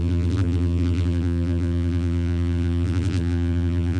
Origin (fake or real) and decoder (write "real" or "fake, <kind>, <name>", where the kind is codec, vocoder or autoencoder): fake, vocoder, BigVGAN v2